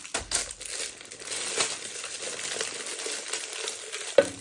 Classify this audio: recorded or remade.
recorded